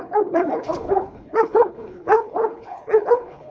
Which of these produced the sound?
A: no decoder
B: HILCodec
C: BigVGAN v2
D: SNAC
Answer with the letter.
B